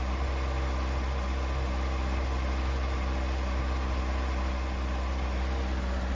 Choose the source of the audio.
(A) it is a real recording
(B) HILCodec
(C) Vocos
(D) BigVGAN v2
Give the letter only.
A